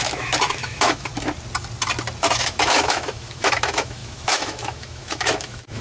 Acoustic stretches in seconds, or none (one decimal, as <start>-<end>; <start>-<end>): 1.1-2.2